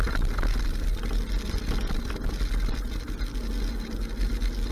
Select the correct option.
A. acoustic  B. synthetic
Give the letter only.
A